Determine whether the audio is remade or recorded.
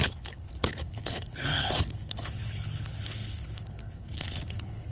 remade